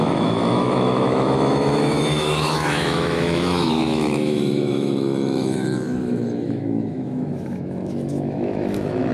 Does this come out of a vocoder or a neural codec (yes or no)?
yes